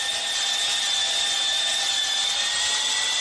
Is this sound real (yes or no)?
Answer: yes